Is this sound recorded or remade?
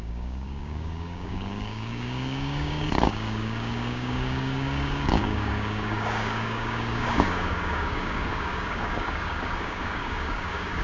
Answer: remade